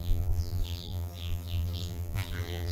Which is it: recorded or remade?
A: remade